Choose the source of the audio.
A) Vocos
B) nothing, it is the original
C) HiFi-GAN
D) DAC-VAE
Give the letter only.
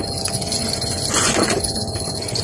A